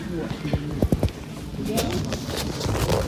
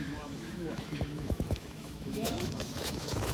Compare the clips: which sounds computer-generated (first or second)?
second